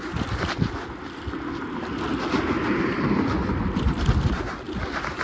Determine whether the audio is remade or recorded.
recorded